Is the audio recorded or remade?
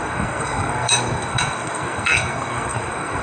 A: remade